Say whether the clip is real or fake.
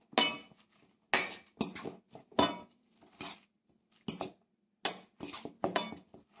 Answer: real